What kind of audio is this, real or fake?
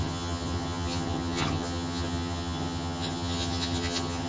fake